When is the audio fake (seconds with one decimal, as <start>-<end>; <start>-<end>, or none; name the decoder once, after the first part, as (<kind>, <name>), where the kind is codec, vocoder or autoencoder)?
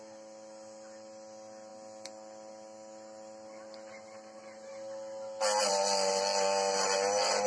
none